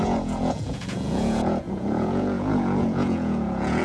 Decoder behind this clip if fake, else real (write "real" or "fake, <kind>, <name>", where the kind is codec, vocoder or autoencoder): fake, vocoder, Vocos